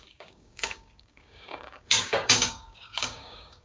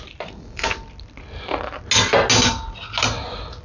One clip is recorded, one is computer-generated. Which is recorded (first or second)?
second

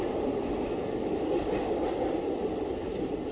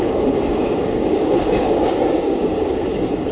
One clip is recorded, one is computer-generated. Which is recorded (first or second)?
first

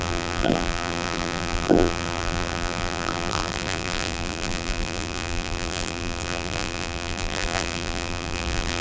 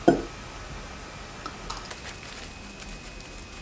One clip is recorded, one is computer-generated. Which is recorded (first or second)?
second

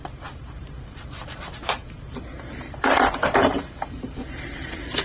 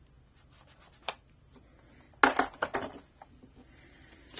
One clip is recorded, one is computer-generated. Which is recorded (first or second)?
second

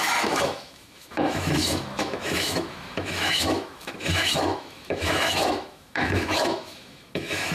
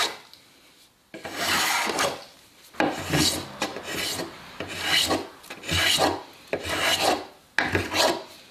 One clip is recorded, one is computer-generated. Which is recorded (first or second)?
second